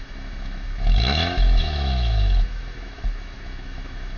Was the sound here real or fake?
fake